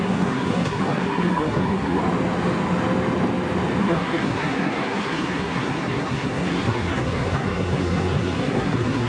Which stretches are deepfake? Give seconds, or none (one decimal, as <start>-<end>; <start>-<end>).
0.0-2.0; 3.8-9.1